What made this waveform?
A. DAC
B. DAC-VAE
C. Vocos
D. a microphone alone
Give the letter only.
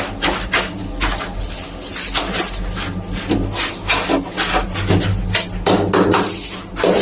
D